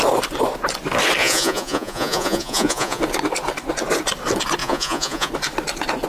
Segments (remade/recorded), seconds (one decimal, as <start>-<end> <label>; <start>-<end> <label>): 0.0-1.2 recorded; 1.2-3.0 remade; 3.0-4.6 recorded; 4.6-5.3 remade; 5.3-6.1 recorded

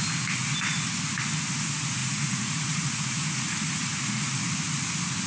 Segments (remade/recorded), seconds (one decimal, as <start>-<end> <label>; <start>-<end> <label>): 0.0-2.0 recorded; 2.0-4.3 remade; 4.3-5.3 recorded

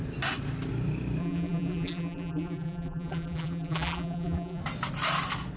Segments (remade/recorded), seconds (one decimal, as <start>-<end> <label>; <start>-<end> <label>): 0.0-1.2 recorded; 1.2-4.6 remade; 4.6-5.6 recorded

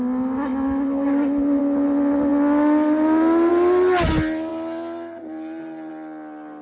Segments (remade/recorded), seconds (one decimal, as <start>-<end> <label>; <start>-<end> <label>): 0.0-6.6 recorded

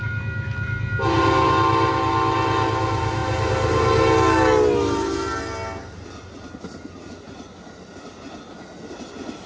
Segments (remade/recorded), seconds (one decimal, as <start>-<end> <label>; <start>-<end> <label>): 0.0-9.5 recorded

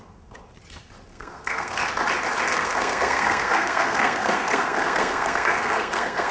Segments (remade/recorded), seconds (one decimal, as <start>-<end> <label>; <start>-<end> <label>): 0.0-1.1 recorded; 1.1-1.9 remade; 1.9-2.5 recorded; 2.5-6.3 remade

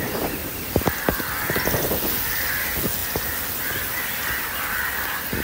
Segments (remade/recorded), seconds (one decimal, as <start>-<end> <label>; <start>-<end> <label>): 0.0-5.4 recorded